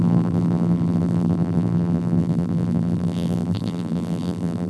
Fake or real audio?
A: fake